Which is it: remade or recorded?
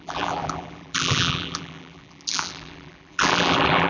remade